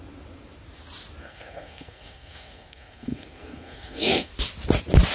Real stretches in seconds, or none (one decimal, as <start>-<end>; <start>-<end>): 0.0-1.2; 4.3-5.1